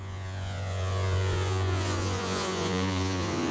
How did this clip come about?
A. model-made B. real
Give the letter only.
A